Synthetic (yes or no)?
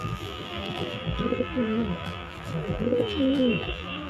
yes